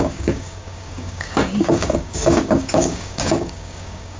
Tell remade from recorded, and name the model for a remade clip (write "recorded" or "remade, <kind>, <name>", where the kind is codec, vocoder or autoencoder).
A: remade, codec, DAC